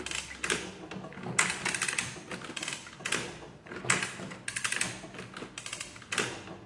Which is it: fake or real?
real